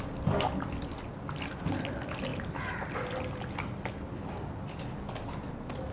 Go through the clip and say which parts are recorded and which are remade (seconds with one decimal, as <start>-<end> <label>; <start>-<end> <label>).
0.0-5.9 recorded